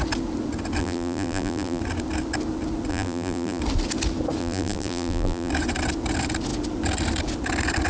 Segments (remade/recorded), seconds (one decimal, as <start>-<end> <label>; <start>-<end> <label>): 0.0-0.8 recorded; 0.8-1.8 remade; 1.8-2.9 recorded; 2.9-3.6 remade; 3.6-4.4 recorded; 4.4-5.5 remade; 5.5-7.9 recorded